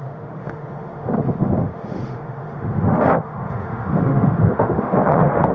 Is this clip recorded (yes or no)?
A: no